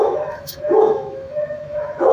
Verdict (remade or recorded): remade